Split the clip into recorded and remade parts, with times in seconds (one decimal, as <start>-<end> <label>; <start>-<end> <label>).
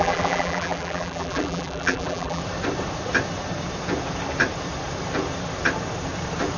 0.0-2.4 remade; 2.4-6.6 recorded